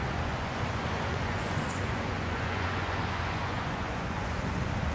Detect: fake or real fake